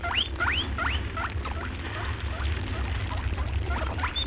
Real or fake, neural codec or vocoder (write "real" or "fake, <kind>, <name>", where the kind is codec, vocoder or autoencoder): real